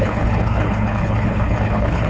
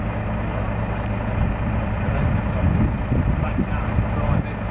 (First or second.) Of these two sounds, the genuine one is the second